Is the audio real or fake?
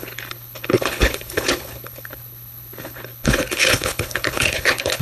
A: fake